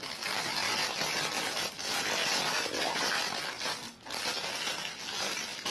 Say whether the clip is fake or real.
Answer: real